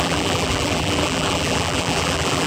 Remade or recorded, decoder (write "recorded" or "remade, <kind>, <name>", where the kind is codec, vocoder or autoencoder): remade, vocoder, BigVGAN v2